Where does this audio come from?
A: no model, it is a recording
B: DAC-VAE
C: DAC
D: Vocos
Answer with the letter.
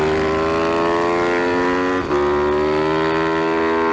A